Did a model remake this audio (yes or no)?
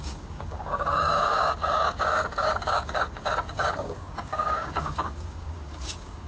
yes